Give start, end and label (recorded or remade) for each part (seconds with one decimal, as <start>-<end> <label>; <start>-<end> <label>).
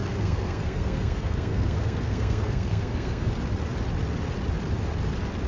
0.0-3.3 remade; 3.3-5.5 recorded